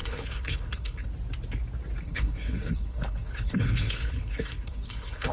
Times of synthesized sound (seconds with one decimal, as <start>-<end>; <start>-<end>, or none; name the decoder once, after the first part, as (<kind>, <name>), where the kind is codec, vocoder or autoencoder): 0.0-1.1 (codec, HILCodec); 2.0-5.3

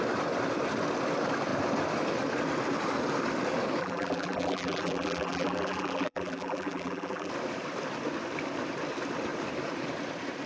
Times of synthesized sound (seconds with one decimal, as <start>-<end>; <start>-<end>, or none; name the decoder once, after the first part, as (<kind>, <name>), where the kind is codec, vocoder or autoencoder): 3.8-7.3 (vocoder, BigVGAN v2)